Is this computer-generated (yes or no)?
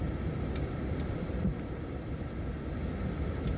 no